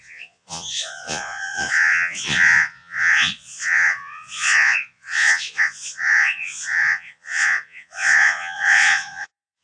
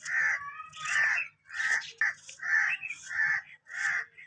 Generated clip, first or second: first